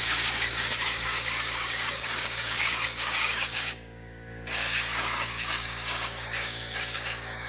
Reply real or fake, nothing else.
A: fake